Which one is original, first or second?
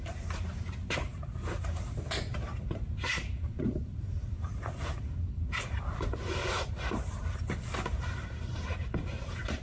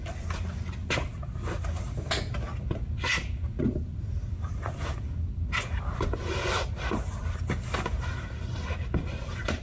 second